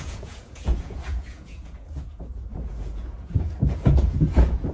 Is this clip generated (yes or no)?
yes